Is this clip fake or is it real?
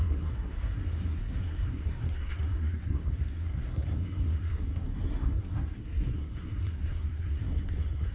fake